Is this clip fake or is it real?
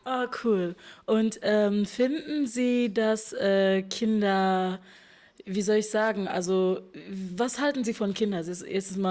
real